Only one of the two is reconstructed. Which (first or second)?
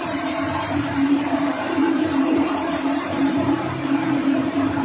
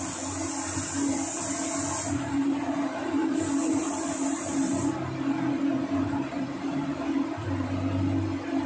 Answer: first